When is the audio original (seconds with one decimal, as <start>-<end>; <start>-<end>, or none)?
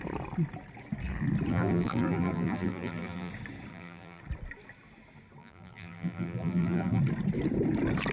0.0-1.5; 3.3-3.7; 4.2-5.4; 7.0-8.1